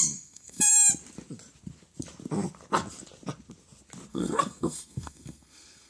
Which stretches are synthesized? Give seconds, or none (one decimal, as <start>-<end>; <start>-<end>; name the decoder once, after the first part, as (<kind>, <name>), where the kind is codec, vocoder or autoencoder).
0.0-0.7 (codec, SNAC); 4.1-5.9